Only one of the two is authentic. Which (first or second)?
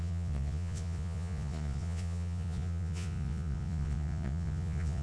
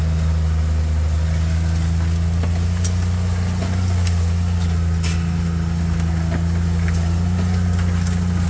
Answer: second